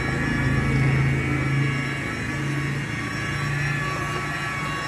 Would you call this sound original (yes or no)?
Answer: yes